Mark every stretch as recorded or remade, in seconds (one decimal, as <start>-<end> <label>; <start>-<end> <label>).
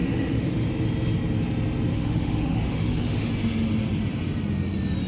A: 0.0-0.7 remade; 0.7-1.9 recorded; 1.9-3.3 remade; 3.3-5.1 recorded